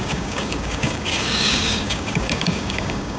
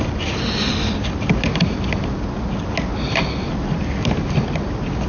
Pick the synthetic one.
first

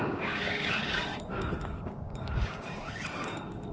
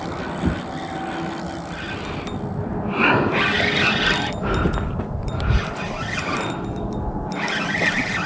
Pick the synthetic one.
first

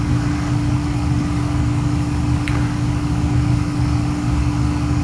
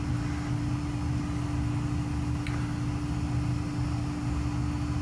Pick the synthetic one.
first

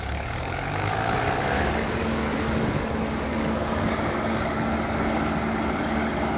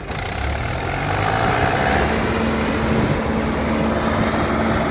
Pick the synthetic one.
first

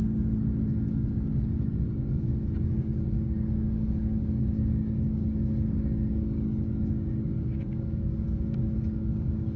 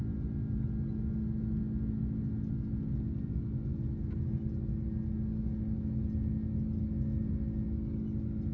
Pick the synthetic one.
first